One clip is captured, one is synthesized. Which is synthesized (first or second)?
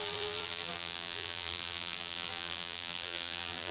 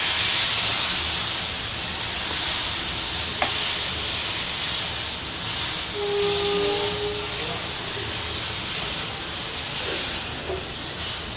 first